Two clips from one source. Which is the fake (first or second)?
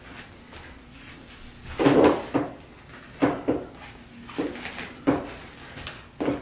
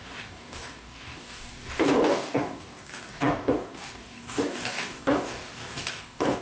second